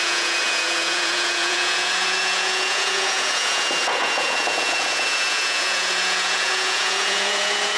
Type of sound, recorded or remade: remade